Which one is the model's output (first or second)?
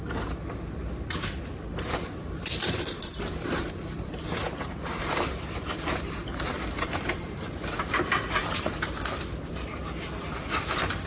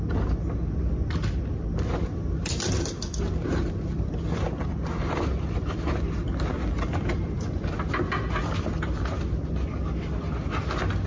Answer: first